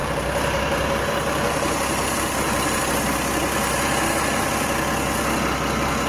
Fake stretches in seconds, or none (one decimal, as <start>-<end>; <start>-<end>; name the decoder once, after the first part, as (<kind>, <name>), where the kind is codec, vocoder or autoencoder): 0.0-2.8 (vocoder, BigVGAN v2)